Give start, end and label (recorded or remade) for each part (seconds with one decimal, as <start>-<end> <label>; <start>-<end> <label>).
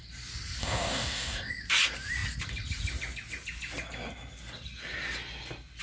0.0-0.6 recorded; 0.6-1.5 remade; 1.5-5.8 recorded